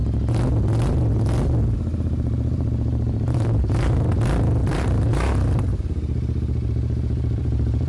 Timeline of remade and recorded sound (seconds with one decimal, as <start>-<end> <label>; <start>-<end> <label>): 0.0-1.9 recorded; 1.9-4.1 remade; 4.1-4.6 recorded; 4.6-7.9 remade

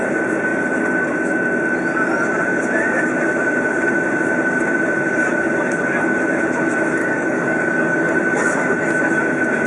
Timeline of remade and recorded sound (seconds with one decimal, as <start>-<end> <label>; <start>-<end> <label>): 0.0-7.0 recorded; 7.0-8.2 remade; 8.2-9.7 recorded

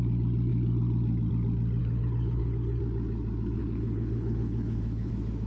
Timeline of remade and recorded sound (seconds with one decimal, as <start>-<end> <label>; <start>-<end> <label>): 0.0-1.8 recorded; 1.8-2.8 remade; 2.8-3.6 recorded; 3.6-5.1 remade; 5.1-5.5 recorded

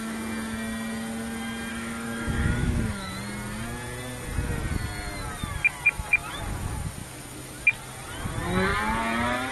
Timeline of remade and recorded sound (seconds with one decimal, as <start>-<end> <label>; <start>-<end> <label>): 0.0-1.7 recorded; 1.7-3.1 remade; 3.1-9.5 recorded